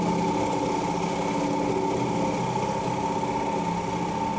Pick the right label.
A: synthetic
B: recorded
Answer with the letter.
B